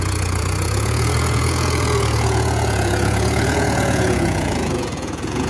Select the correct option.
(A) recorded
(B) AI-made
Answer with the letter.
B